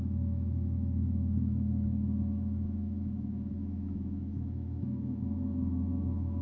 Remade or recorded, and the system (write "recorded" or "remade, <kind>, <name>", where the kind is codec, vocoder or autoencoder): remade, autoencoder, DAC-VAE